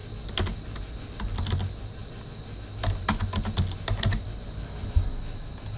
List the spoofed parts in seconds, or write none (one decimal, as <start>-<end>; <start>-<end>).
none